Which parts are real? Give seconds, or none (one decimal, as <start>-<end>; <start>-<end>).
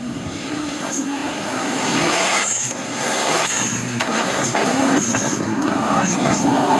none